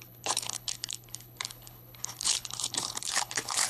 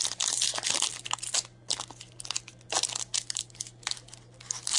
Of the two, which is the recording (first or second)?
second